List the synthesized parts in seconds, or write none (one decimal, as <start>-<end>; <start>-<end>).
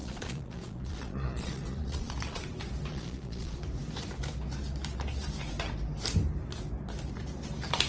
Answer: 0.0-2.4; 2.9-3.6